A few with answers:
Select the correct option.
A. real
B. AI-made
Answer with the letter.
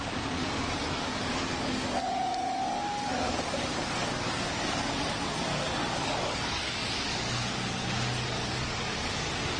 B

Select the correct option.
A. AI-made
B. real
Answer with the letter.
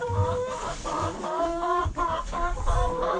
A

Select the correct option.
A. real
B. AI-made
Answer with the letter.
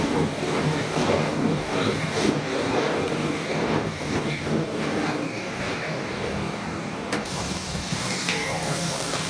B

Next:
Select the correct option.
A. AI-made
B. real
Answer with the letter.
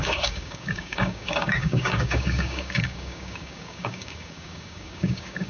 A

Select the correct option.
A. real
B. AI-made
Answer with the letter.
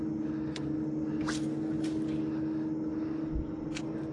A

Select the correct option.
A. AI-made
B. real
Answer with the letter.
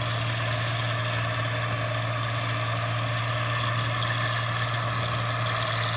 B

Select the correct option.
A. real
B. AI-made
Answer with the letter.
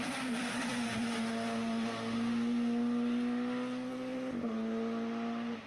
A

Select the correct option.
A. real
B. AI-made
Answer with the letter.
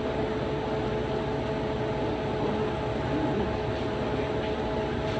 A